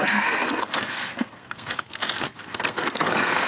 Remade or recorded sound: remade